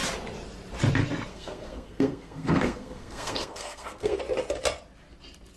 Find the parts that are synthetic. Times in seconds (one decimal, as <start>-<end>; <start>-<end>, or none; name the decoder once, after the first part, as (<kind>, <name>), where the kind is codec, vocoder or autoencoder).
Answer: 1.3-4.2 (codec, SNAC)